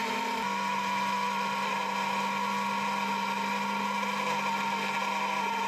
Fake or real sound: real